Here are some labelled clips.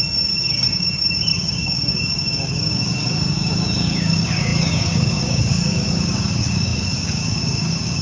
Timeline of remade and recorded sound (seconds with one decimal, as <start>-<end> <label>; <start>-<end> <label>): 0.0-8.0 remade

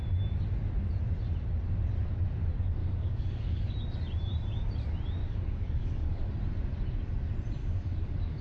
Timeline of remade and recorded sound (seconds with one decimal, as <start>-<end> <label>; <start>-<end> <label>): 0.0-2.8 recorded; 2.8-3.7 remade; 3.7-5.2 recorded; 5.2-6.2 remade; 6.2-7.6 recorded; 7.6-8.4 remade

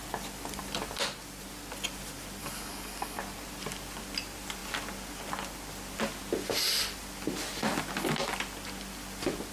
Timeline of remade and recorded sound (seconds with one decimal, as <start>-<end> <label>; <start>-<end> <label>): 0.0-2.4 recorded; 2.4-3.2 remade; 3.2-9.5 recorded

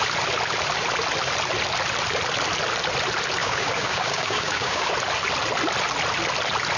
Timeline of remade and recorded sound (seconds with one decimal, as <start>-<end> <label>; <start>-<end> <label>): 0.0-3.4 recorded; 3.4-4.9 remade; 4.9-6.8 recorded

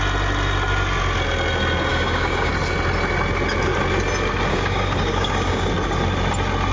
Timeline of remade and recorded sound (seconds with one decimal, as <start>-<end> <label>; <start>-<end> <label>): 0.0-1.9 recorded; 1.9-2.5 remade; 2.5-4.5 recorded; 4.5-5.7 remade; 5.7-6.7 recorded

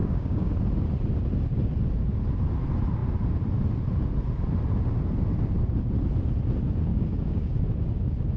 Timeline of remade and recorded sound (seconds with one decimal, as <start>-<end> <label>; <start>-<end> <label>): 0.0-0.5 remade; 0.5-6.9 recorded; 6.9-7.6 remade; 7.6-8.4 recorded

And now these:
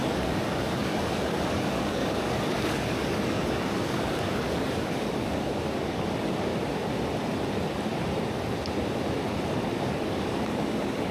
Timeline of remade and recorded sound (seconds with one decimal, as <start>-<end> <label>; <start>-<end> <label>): 0.0-6.5 remade; 6.5-9.7 recorded; 9.7-11.1 remade

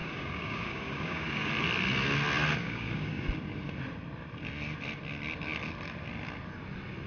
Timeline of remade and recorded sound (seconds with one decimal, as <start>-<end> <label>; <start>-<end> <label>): 0.0-1.5 remade; 1.5-2.6 recorded; 2.6-3.2 remade; 3.2-7.1 recorded